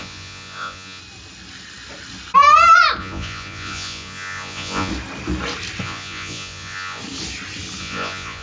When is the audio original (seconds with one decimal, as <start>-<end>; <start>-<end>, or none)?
1.0-3.0; 4.9-5.8; 7.0-7.8